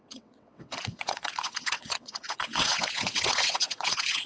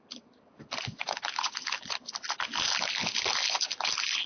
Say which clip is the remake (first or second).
first